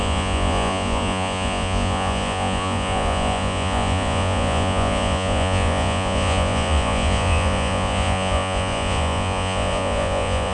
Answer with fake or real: fake